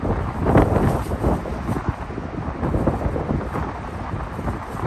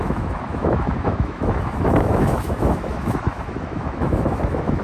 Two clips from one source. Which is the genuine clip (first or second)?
first